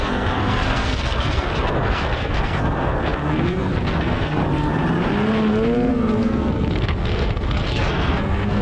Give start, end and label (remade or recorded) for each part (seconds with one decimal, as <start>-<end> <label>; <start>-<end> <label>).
0.0-4.4 remade; 4.4-5.9 recorded; 5.9-8.6 remade